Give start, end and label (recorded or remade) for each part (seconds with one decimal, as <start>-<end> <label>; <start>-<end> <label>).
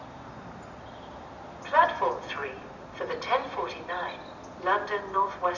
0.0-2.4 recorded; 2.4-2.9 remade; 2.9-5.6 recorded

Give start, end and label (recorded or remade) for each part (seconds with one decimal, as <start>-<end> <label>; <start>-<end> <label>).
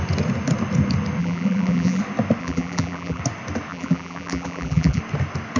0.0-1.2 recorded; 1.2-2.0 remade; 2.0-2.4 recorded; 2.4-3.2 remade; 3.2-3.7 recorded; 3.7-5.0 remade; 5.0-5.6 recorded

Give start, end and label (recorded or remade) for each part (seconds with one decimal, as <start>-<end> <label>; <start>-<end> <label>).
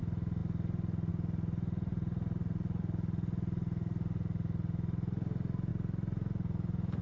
0.0-1.9 recorded; 1.9-2.8 remade; 2.8-5.7 recorded; 5.7-7.0 remade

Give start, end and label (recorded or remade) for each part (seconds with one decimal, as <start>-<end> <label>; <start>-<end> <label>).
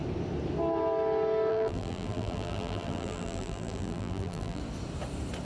0.0-1.5 recorded; 1.5-4.6 remade; 4.6-5.4 recorded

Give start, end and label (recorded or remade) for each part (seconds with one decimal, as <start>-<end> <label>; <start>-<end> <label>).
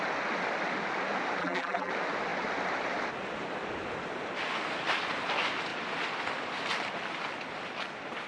0.0-1.4 recorded; 1.4-1.9 remade; 1.9-8.3 recorded